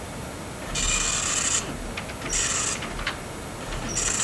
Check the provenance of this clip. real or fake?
fake